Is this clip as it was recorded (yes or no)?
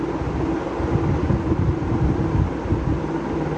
yes